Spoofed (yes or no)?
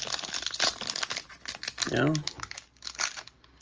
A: no